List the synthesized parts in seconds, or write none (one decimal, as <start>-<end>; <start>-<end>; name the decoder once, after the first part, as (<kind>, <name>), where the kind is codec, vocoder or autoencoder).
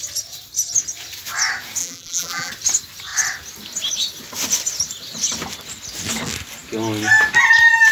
1.8-2.5 (vocoder, BigVGAN v2)